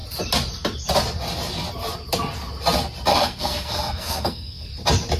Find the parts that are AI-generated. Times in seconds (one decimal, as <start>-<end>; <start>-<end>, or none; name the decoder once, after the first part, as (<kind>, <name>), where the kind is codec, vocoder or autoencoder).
3.1-4.7 (codec, SNAC)